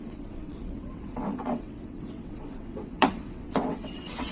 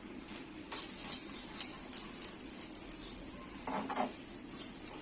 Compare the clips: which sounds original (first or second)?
second